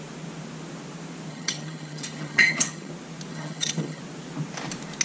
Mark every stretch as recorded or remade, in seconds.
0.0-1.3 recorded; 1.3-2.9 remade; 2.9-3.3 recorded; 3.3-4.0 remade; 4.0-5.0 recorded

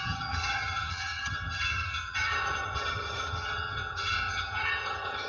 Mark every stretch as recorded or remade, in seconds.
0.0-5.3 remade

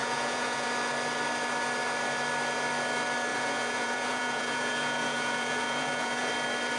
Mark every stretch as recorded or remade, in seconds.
0.0-0.7 remade; 0.7-3.3 recorded; 3.3-6.3 remade; 6.3-6.8 recorded